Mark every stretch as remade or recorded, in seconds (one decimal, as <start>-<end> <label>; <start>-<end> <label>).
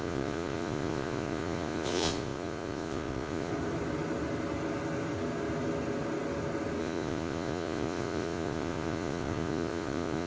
0.0-3.5 remade; 3.5-6.8 recorded; 6.8-10.3 remade